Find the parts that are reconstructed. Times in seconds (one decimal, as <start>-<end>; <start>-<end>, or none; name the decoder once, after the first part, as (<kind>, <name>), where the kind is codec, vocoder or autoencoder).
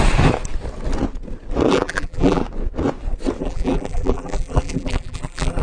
1.7-2.4 (vocoder, BigVGAN v2); 3.4-5.6